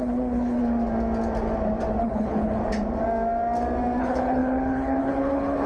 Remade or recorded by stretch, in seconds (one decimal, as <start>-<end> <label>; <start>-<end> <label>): 0.0-0.6 remade; 0.6-2.0 recorded; 2.0-2.6 remade; 2.6-4.0 recorded; 4.0-5.7 remade